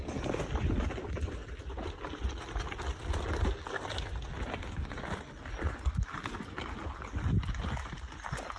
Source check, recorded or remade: recorded